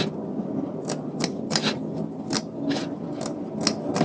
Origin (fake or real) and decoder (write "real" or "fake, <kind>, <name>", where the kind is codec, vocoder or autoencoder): real